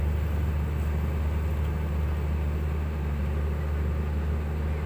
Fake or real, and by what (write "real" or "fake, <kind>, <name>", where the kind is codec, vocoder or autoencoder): real